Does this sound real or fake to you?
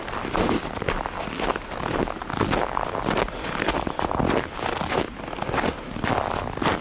real